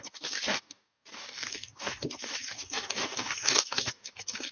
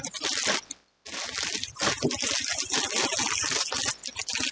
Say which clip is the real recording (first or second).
second